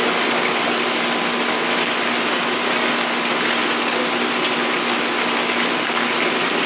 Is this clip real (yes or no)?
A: yes